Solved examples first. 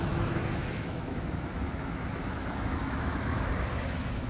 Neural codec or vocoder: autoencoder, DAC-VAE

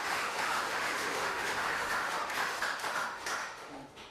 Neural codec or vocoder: autoencoder, DAC-VAE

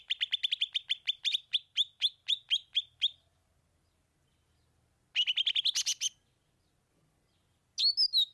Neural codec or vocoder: none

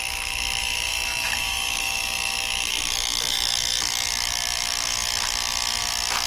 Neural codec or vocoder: autoencoder, DAC-VAE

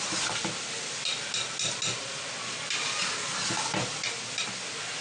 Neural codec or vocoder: none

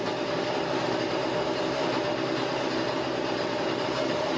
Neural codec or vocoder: none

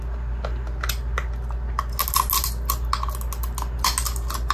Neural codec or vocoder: none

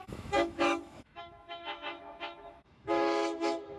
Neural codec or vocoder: autoencoder, DAC-VAE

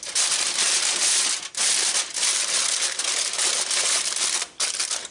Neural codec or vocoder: none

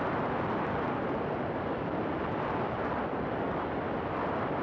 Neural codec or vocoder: none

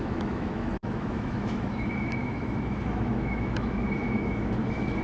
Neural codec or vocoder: autoencoder, DAC-VAE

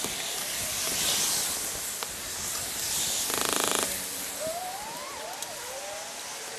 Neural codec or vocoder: none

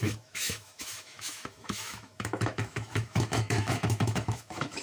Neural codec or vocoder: autoencoder, DAC-VAE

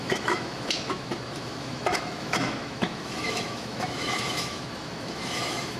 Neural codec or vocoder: autoencoder, DAC-VAE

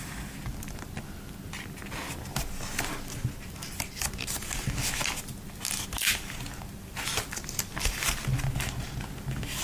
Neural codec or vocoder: none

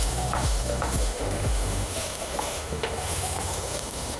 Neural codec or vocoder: autoencoder, DAC-VAE